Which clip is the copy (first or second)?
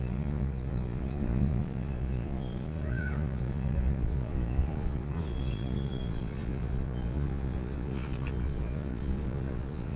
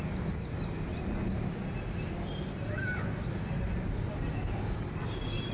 first